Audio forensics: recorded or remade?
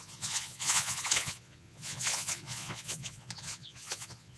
remade